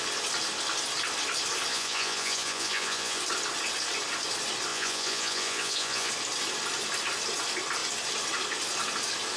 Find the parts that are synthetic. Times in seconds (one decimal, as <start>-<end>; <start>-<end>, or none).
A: 1.7-3.2; 4.7-6.1